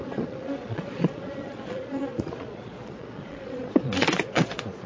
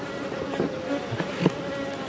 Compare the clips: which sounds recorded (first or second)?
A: second